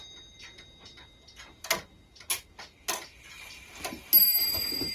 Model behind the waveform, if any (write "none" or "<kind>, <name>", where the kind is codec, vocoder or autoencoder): none